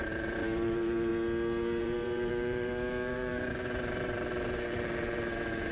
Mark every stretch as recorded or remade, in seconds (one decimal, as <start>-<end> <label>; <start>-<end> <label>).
0.0-1.1 remade; 1.1-1.8 recorded; 1.8-5.7 remade